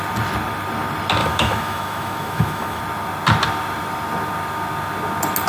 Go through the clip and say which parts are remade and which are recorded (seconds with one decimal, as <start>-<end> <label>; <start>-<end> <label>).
0.0-1.2 recorded; 1.2-2.8 remade; 2.8-5.5 recorded